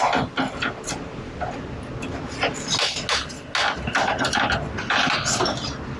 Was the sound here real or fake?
real